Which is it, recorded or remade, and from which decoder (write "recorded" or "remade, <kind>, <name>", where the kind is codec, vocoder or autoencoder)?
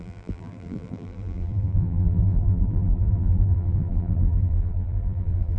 remade, vocoder, BigVGAN v2